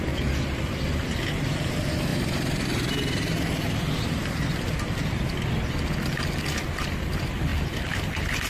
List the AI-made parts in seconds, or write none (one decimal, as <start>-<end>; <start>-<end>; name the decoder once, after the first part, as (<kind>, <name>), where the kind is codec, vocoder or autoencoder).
none